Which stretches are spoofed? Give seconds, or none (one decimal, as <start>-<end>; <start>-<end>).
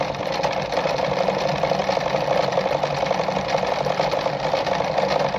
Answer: none